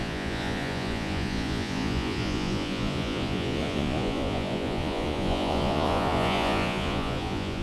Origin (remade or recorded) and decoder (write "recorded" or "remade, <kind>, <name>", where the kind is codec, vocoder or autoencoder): remade, vocoder, Vocos